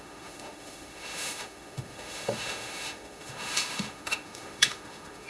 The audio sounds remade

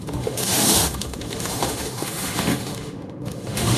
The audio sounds remade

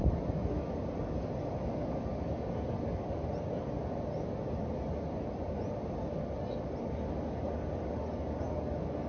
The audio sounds recorded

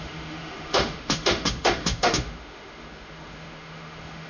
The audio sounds remade